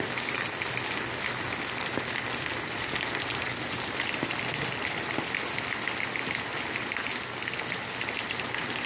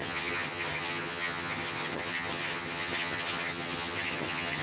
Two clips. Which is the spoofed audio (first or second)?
second